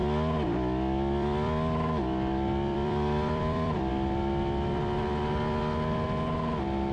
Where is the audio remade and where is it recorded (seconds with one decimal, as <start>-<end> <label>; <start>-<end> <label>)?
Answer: 0.0-3.9 remade; 3.9-6.9 recorded